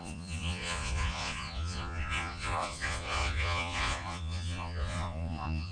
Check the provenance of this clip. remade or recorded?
remade